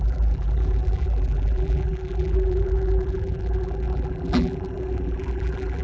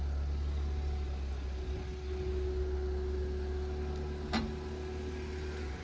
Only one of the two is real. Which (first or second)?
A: second